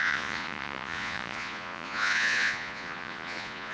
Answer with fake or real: fake